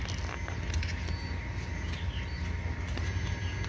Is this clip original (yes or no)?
yes